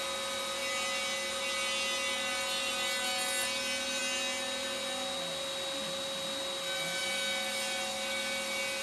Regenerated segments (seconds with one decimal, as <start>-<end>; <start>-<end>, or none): none